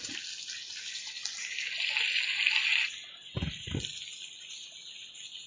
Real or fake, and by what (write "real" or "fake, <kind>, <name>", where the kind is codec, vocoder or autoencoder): real